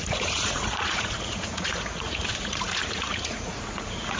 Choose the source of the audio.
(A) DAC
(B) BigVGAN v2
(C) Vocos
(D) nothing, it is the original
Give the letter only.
C